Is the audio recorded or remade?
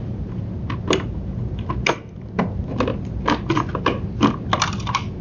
recorded